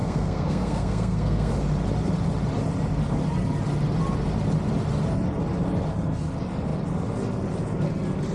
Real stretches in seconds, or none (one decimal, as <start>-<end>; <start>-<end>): 1.5-8.3